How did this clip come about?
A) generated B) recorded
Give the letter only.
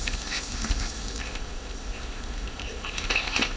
A